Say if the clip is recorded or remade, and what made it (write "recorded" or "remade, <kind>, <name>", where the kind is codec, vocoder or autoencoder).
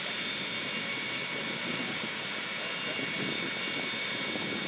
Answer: recorded